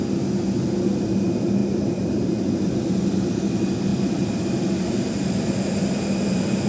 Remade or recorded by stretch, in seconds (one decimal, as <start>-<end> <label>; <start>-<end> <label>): 0.0-1.6 recorded; 1.6-2.4 remade; 2.4-5.8 recorded; 5.8-6.7 remade